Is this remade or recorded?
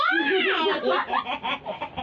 recorded